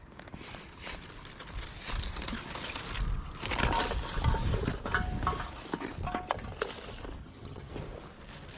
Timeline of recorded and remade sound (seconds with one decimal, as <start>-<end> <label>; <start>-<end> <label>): 0.0-7.2 recorded; 7.2-7.7 remade; 7.7-8.6 recorded